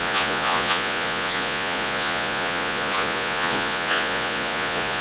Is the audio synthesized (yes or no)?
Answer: yes